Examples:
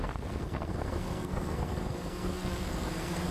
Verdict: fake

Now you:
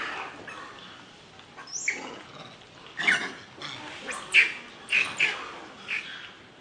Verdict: real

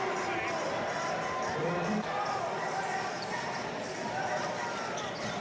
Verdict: real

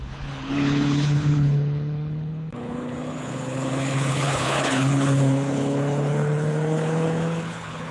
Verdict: fake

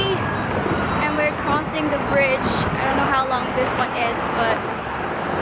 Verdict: real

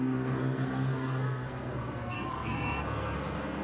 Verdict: fake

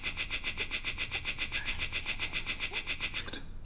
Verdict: real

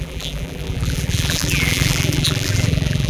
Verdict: fake